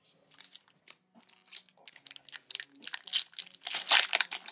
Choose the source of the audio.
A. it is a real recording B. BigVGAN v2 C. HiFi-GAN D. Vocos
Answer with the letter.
A